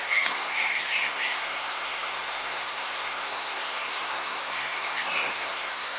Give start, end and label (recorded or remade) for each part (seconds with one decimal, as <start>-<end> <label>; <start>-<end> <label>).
0.0-6.0 remade